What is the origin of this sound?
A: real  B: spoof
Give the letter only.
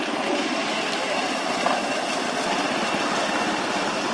A